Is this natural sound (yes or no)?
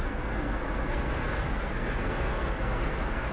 no